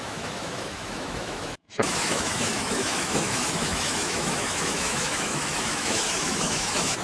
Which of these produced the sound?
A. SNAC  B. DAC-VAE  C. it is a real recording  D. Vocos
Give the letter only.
B